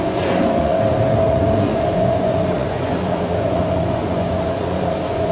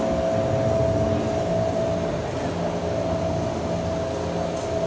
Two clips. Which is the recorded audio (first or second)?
second